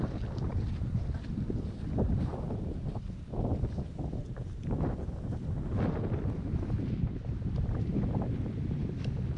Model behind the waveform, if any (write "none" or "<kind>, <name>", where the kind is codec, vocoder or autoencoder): vocoder, BigVGAN v2